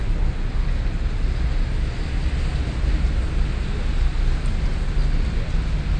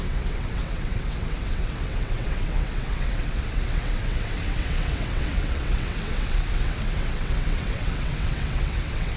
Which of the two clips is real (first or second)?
first